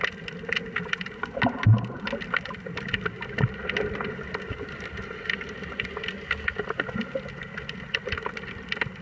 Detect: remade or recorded recorded